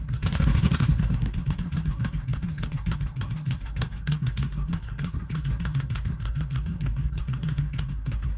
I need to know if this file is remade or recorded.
remade